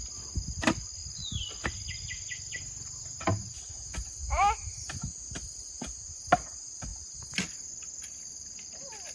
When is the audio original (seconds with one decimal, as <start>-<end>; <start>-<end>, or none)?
0.0-9.1